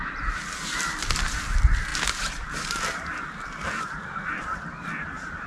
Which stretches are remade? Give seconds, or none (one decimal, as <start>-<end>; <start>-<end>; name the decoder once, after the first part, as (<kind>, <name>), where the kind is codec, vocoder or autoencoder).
none